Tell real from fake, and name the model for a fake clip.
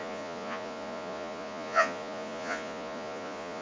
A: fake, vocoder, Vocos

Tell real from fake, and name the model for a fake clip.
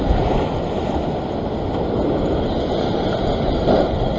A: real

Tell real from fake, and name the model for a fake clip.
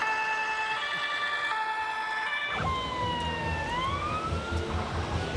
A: real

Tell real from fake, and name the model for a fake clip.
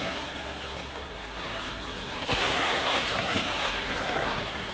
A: fake, codec, SNAC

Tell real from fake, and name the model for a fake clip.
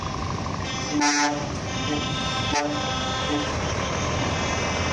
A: real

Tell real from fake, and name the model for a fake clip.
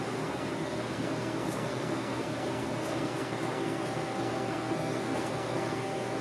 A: fake, codec, SNAC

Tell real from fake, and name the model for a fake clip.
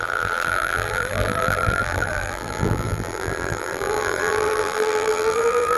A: fake, vocoder, BigVGAN v2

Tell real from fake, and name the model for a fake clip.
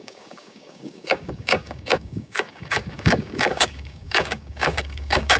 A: fake, codec, DAC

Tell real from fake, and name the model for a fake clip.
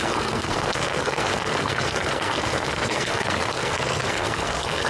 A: fake, codec, SNAC